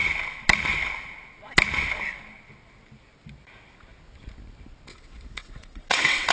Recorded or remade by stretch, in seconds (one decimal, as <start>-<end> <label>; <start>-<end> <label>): 0.0-4.9 recorded; 4.9-6.3 remade